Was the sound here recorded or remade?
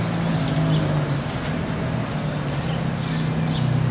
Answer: recorded